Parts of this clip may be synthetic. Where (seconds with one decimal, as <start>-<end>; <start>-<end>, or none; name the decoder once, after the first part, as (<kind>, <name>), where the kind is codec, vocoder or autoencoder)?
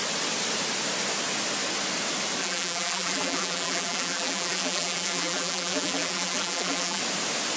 2.4-7.0 (vocoder, BigVGAN v2)